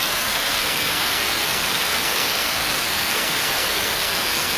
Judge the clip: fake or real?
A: fake